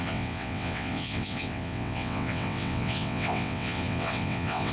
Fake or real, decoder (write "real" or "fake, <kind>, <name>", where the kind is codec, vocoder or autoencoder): fake, vocoder, WaveNeXt